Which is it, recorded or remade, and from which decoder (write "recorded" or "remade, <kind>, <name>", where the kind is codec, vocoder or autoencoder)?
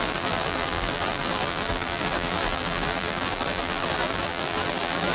remade, vocoder, BigVGAN v2